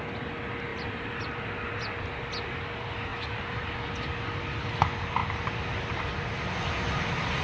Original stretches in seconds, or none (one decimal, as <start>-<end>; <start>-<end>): 0.0-0.7; 1.2-3.1; 3.7-7.4